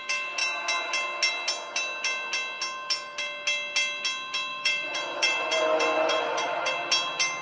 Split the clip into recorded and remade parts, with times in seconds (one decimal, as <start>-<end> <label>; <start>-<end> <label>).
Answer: 0.0-4.5 recorded; 4.5-6.7 remade; 6.7-7.4 recorded